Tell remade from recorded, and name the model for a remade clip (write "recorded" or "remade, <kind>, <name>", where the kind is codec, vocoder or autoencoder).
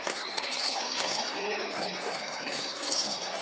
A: remade, codec, SNAC